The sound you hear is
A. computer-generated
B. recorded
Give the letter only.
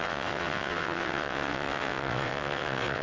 A